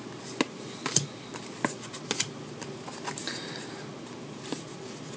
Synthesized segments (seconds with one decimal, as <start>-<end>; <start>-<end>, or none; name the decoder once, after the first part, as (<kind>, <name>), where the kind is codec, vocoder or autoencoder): none